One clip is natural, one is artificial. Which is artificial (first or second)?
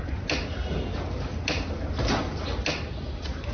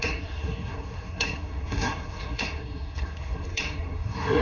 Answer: second